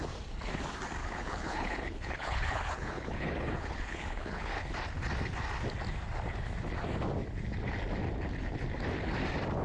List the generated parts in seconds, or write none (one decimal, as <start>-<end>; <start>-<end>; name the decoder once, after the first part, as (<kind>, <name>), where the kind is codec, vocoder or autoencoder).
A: 1.0-4.7 (codec, HILCodec)

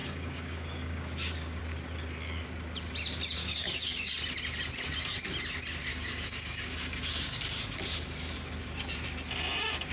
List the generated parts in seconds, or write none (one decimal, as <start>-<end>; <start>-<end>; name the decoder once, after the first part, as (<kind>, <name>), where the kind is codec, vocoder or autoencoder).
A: 0.0-1.6 (codec, DAC); 3.4-4.1; 5.9-7.8

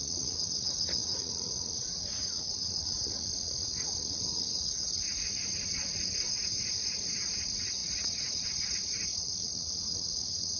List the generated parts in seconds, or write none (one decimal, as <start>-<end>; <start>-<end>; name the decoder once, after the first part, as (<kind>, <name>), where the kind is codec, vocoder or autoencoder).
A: 0.0-10.6 (vocoder, Vocos)

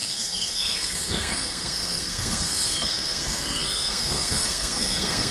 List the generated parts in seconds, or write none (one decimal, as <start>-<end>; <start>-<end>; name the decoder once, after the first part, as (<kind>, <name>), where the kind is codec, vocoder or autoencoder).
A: 0.0-5.3 (codec, SNAC)

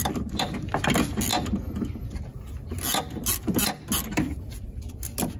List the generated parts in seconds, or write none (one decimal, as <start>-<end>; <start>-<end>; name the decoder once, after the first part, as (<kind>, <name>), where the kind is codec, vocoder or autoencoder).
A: none

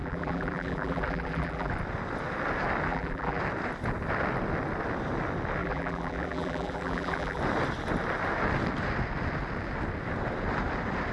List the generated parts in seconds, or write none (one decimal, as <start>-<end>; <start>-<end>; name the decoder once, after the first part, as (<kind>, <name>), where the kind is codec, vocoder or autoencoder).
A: 0.0-1.7 (vocoder, BigVGAN v2); 2.9-3.4; 5.6-7.4